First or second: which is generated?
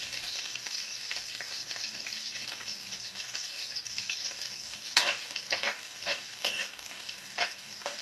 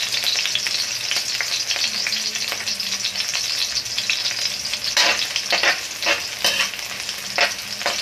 first